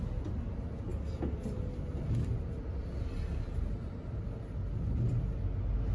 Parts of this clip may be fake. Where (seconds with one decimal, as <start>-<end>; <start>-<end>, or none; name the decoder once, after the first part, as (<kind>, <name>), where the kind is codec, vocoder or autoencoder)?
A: none